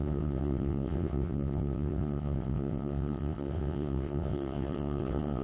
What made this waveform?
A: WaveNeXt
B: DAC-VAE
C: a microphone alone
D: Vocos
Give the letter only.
A